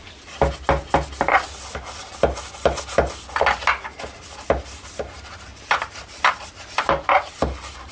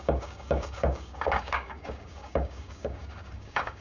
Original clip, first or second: first